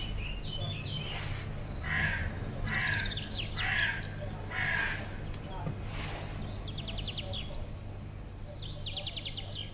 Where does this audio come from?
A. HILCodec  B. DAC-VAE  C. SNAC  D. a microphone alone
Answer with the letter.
D